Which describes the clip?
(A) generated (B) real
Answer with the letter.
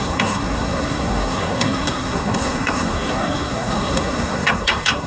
A